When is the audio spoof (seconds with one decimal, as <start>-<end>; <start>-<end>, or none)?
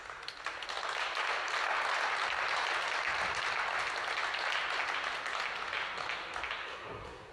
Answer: 6.6-7.3